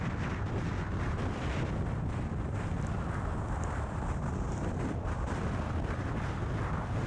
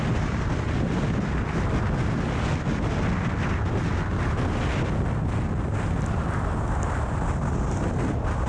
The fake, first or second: first